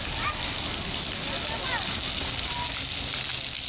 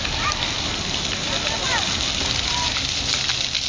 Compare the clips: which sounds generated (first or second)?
second